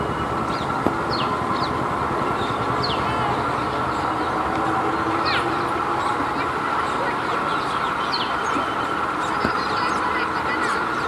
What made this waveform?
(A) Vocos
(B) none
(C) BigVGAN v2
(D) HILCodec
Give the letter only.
B